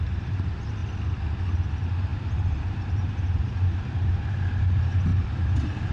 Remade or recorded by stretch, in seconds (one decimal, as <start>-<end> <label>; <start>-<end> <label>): 0.0-0.8 remade; 0.8-1.4 recorded; 1.4-5.1 remade; 5.1-5.9 recorded